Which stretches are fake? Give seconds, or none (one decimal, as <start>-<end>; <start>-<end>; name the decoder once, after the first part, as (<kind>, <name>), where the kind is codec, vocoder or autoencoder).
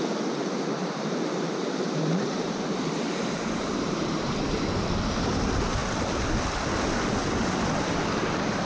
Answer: 0.8-4.7 (vocoder, BigVGAN v2)